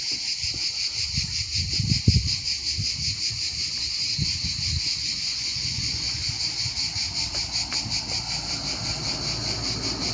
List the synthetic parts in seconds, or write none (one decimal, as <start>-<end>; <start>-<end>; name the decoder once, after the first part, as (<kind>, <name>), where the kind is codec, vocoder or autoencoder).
4.9-6.3 (vocoder, Vocos)